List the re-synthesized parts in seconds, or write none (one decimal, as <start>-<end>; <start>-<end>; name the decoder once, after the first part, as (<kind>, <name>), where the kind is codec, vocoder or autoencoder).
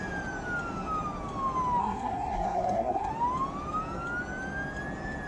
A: 1.8-3.1 (codec, SNAC)